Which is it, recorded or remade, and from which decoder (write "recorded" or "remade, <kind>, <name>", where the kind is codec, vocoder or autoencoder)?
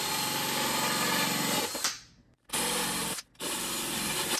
recorded